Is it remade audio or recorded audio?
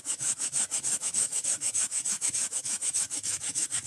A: remade